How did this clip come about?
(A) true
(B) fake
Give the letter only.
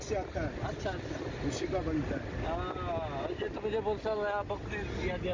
A